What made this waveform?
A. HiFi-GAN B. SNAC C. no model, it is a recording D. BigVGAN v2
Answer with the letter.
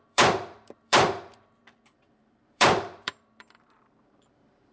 D